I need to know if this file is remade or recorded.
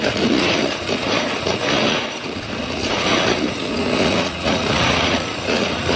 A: remade